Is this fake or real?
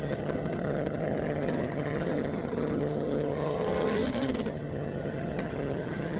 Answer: fake